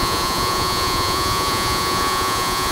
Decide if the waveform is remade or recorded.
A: remade